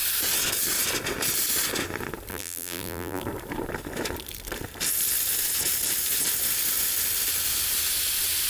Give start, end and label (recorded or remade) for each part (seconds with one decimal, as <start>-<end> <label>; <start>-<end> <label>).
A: 0.0-2.3 recorded; 2.3-3.2 remade; 3.2-8.5 recorded